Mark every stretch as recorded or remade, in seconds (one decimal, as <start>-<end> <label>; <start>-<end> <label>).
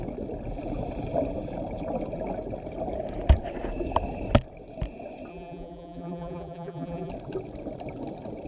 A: 0.0-5.3 recorded; 5.3-7.1 remade; 7.1-8.5 recorded